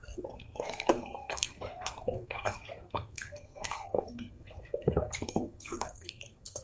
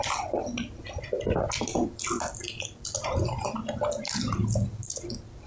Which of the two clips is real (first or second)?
second